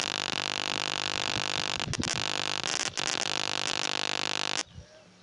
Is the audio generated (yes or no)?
no